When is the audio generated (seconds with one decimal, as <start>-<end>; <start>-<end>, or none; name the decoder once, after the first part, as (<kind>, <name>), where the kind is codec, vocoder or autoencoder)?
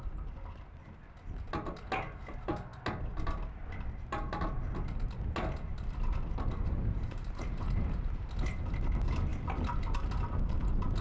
6.6-7.9 (vocoder, BigVGAN v2)